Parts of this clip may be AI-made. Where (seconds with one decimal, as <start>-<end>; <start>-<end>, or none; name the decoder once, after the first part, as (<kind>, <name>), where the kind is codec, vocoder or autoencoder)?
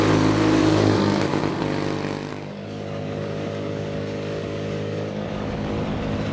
0.6-1.4 (codec, DAC); 2.3-5.7